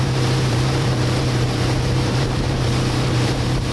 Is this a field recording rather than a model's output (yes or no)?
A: no